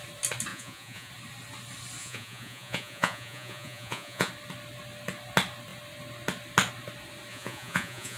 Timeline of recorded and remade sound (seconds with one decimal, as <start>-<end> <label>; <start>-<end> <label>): 0.0-0.5 recorded; 0.5-1.1 remade; 1.1-2.0 recorded; 2.0-4.3 remade; 4.3-7.3 recorded; 7.3-8.2 remade